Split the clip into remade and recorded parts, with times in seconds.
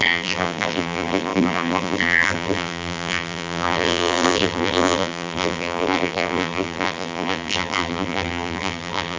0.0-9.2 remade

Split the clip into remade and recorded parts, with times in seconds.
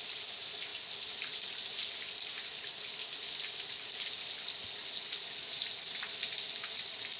0.0-7.2 recorded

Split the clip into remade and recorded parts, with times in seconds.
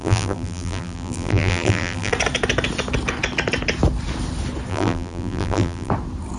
0.0-2.1 remade; 2.1-4.7 recorded; 4.7-5.9 remade; 5.9-6.4 recorded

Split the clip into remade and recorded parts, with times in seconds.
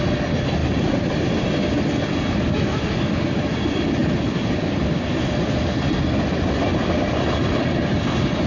0.0-8.5 recorded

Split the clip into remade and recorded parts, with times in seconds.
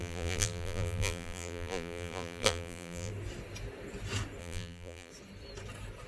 0.0-3.1 remade; 3.1-4.4 recorded; 4.4-5.1 remade; 5.1-6.1 recorded